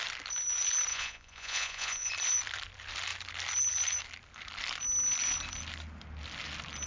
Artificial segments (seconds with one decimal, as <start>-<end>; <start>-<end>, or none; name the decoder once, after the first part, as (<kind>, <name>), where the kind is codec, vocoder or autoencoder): 0.9-2.1 (vocoder, Vocos)